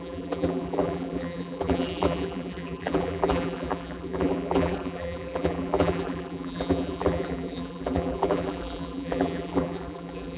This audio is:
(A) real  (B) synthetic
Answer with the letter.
B